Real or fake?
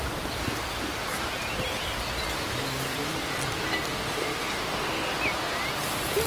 real